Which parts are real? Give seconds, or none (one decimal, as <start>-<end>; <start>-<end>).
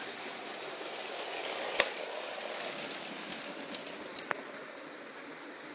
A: 0.0-5.7